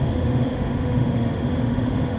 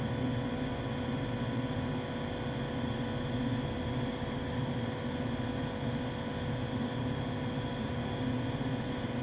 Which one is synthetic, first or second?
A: first